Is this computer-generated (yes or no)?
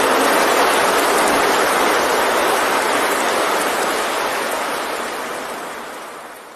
no